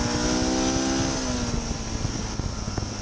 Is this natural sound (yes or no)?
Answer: yes